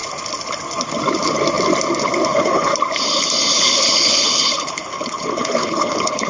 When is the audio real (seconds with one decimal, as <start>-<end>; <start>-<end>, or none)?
0.0-2.3; 2.7-3.5